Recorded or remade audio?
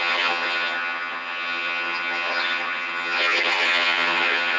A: remade